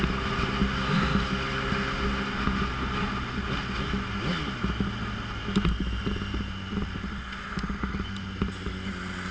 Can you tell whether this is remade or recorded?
recorded